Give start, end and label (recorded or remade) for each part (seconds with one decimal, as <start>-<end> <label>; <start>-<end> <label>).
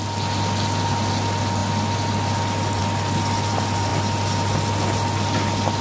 0.0-5.8 recorded